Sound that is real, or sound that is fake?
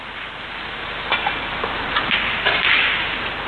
fake